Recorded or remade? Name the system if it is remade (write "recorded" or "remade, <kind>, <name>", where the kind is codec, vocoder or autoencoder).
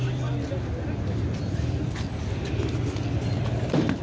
recorded